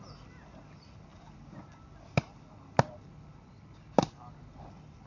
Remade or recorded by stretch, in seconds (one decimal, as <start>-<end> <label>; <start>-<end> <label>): 0.0-5.1 recorded